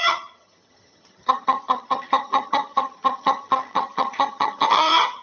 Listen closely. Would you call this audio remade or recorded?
remade